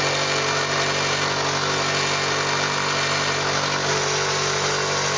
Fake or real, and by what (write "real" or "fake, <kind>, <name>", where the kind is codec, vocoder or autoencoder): real